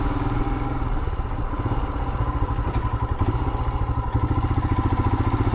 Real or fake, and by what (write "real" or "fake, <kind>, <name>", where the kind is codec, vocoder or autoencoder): real